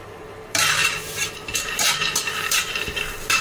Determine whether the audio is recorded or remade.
remade